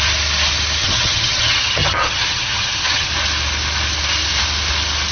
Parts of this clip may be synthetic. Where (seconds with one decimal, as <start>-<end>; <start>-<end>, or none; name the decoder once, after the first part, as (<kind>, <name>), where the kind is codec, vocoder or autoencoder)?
0.8-3.1 (vocoder, HiFi-GAN)

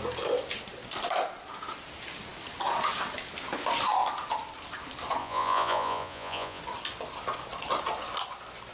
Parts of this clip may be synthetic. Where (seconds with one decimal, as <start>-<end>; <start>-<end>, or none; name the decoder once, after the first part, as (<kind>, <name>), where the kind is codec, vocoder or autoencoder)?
5.2-6.6 (vocoder, Vocos)

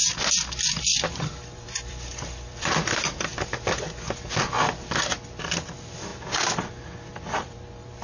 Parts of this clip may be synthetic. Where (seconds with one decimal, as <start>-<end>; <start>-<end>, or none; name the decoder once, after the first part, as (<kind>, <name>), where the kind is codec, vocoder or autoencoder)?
0.8-3.3 (vocoder, BigVGAN v2); 5.5-6.1; 7.4-8.0

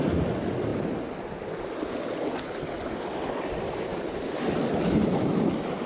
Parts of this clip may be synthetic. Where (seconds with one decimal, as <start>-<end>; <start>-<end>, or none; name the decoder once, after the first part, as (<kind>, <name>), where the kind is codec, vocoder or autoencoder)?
none